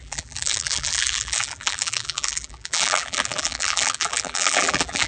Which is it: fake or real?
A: fake